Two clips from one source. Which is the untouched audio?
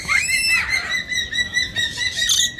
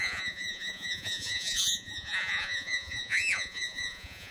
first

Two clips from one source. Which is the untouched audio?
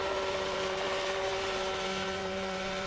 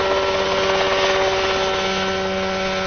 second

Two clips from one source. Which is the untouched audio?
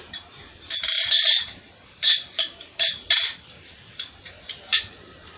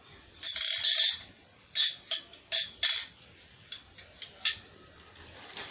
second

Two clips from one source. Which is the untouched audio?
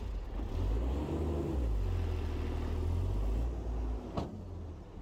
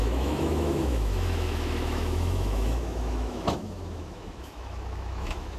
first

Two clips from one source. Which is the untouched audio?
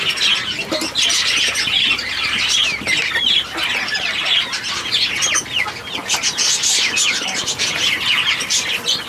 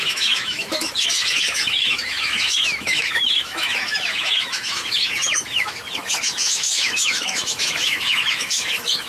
first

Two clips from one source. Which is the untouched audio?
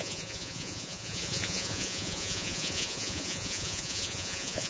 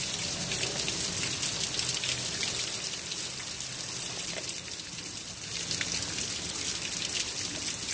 second